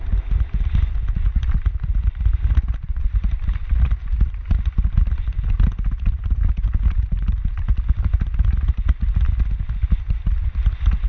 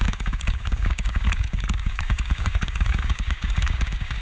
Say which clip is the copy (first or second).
second